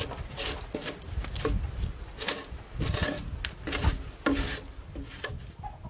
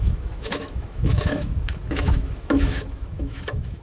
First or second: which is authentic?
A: first